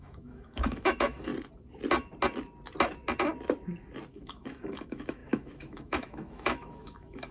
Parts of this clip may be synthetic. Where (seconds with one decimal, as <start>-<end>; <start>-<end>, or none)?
0.0-1.3; 4.1-7.3